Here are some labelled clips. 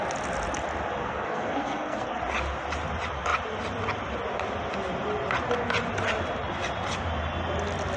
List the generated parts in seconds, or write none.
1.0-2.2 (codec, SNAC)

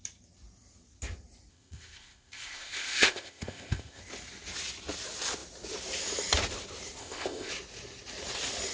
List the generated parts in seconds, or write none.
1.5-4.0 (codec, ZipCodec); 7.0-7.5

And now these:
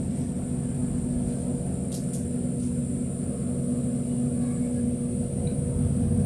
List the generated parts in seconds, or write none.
none

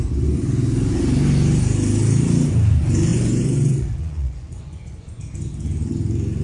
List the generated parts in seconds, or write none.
3.1-5.2 (vocoder, Vocos)

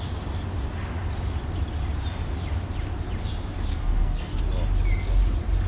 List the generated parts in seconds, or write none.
3.7-4.4 (codec, SNAC)

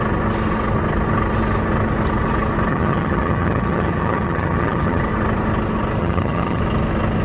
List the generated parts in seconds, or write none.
2.7-5.0 (vocoder, HiFi-GAN); 6.0-6.6

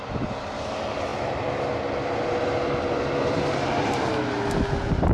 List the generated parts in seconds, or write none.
1.1-4.2 (vocoder, BigVGAN v2)

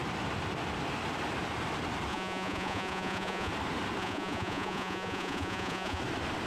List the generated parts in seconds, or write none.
2.1-3.5 (vocoder, Vocos); 4.0-6.0